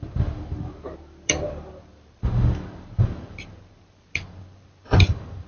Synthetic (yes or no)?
yes